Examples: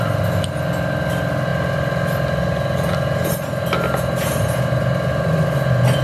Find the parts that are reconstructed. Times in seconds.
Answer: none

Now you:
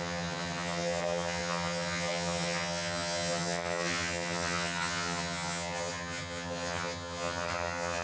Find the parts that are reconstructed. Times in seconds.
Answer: 0.0-8.0

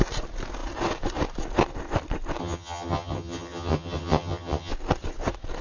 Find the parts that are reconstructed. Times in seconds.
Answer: 2.4-4.7